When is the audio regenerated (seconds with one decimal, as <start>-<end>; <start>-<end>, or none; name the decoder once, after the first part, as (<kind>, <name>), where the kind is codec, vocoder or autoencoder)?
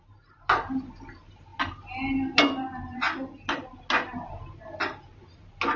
none